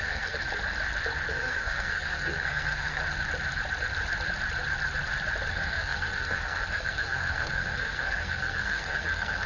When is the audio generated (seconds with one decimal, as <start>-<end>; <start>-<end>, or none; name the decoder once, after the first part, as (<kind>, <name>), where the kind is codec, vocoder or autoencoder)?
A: 0.0-0.4 (codec, SNAC); 1.3-3.0; 5.5-9.5